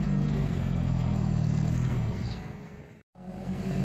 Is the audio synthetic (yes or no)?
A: yes